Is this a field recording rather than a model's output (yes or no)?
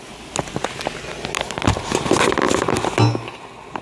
yes